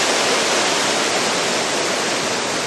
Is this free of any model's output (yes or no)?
yes